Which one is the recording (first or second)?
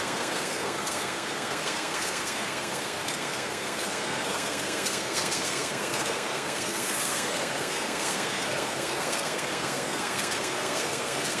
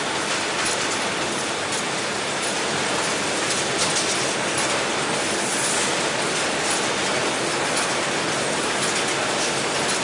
second